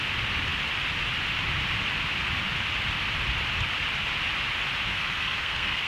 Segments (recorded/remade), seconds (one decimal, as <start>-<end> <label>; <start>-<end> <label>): 0.0-4.9 recorded; 4.9-5.9 remade